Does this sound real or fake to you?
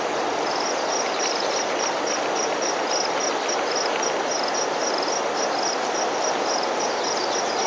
real